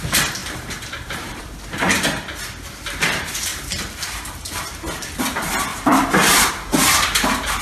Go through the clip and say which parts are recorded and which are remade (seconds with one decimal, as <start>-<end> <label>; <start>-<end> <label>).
0.0-0.4 recorded; 0.4-1.4 remade; 1.4-3.5 recorded; 3.5-4.3 remade; 4.3-5.7 recorded; 5.7-6.5 remade; 6.5-7.6 recorded